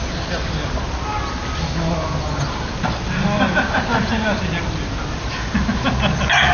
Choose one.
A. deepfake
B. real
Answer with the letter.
B